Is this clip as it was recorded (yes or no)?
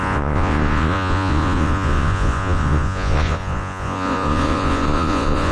no